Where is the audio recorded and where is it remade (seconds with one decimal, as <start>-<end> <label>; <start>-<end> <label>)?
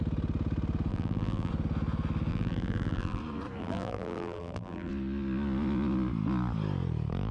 0.0-0.9 recorded; 0.9-1.5 remade; 1.5-2.3 recorded; 2.3-3.2 remade; 3.2-3.6 recorded; 3.6-4.9 remade; 4.9-7.3 recorded